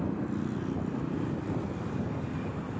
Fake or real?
real